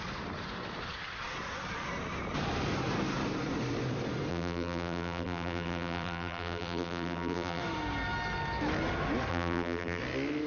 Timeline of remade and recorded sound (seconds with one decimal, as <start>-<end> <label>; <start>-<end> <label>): 0.0-4.3 recorded; 4.3-7.6 remade; 7.6-9.3 recorded; 9.3-10.0 remade; 10.0-10.5 recorded